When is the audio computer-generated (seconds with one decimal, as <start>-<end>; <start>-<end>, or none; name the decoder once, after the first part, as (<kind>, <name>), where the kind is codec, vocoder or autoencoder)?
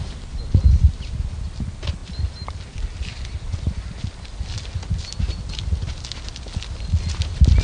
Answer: none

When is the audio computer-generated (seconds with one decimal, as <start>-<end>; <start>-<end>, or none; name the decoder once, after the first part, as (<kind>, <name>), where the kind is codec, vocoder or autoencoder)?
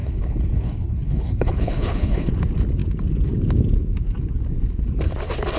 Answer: 0.0-2.3 (codec, HILCodec)